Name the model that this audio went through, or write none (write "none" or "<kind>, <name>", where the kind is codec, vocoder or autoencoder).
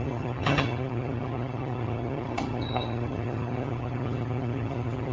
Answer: vocoder, HiFi-GAN